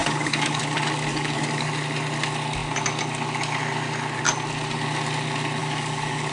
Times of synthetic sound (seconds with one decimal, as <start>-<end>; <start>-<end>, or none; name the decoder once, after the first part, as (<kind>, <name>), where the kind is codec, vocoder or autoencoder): 0.0-0.6 (codec, DAC); 1.1-1.7; 5.6-6.3